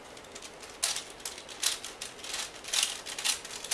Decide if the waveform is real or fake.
real